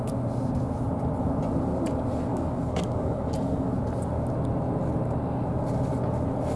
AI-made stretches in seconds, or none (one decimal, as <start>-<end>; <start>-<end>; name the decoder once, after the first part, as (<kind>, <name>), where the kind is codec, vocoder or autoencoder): 2.3-3.7 (codec, DAC)